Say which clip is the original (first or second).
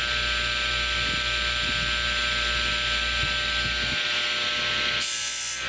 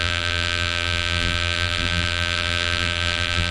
first